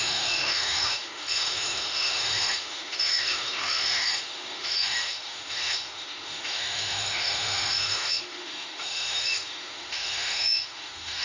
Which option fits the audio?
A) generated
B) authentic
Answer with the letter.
A